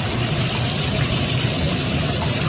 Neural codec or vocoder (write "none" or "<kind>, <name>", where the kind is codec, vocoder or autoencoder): none